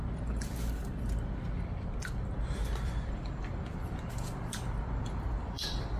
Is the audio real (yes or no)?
no